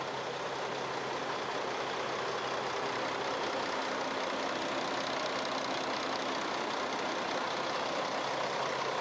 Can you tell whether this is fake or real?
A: real